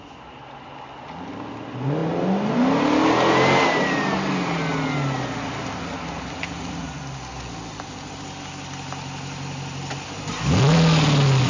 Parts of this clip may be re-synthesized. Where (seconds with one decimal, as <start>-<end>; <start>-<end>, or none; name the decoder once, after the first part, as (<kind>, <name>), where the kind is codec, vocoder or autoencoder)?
none